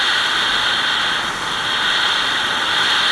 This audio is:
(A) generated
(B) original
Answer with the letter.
B